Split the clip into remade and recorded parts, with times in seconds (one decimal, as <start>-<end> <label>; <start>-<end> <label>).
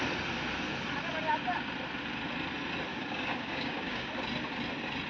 0.0-2.9 recorded; 2.9-4.1 remade; 4.1-5.1 recorded